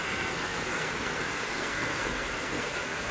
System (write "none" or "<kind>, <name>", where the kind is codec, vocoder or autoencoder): codec, SNAC